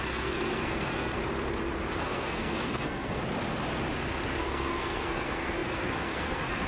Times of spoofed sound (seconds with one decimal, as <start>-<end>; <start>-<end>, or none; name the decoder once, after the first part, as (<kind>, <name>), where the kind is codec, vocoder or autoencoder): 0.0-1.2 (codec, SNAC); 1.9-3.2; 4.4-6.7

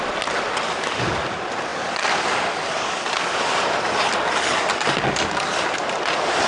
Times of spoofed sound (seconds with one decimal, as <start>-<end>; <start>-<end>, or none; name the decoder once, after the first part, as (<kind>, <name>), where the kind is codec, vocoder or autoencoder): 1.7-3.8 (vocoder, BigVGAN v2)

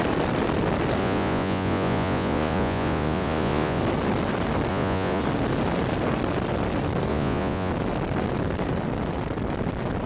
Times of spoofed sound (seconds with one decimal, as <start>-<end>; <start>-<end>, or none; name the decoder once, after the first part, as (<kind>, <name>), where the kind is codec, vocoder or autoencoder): 1.0-3.8 (vocoder, Vocos); 4.7-5.2; 7.1-7.7